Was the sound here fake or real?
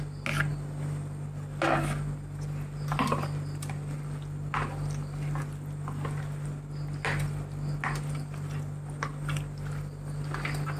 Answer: real